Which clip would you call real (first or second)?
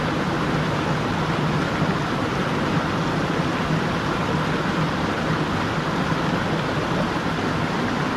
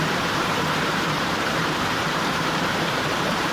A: first